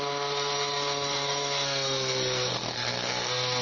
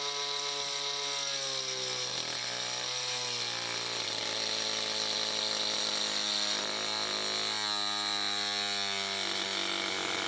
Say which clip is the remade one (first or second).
first